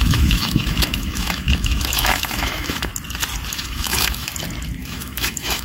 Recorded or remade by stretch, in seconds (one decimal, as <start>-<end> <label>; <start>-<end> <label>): 0.0-2.9 remade; 2.9-3.5 recorded; 3.5-4.3 remade; 4.3-4.8 recorded; 4.8-5.6 remade